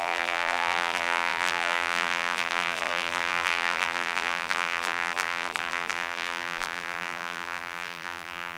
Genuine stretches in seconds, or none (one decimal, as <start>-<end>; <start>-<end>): none